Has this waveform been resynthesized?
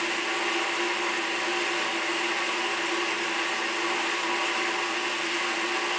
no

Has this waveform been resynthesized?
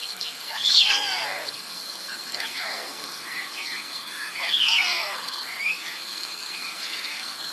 yes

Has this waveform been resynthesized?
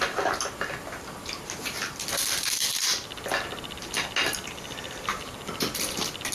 no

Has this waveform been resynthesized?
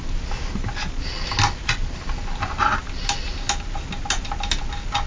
no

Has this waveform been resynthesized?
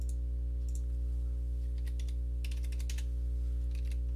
no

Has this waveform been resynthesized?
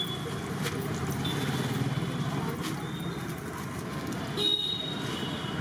no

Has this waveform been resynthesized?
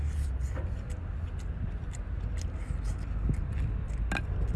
no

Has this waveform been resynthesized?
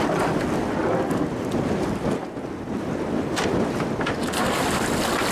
no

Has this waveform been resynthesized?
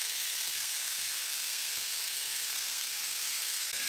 yes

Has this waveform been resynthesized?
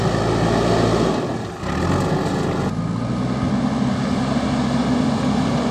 no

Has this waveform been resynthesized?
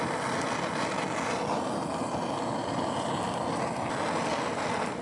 no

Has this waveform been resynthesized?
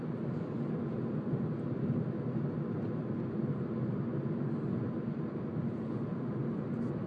no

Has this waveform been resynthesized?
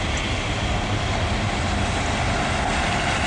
no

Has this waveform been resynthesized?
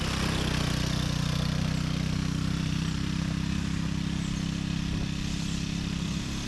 no